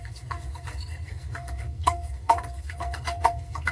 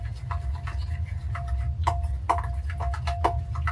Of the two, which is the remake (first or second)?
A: first